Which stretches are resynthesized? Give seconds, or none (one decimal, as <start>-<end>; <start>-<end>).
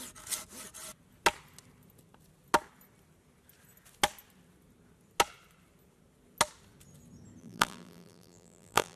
7.4-9.0